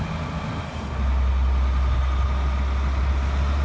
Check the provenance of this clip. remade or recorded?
recorded